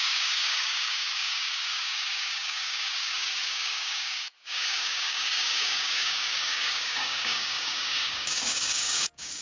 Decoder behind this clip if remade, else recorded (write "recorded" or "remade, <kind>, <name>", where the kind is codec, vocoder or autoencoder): remade, codec, DAC